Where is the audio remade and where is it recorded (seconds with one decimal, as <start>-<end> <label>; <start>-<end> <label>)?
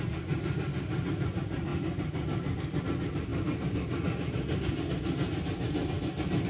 0.0-6.5 recorded